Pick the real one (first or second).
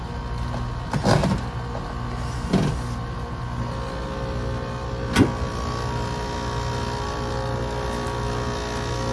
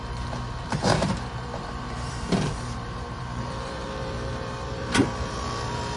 first